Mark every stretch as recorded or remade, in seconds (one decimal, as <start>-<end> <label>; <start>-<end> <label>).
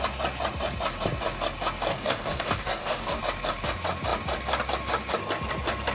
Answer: 0.0-1.9 recorded; 1.9-3.2 remade; 3.2-5.9 recorded